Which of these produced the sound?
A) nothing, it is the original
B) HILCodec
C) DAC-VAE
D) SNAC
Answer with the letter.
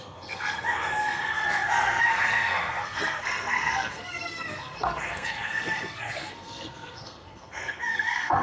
D